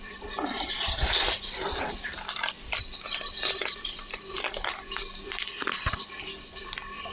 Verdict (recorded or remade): remade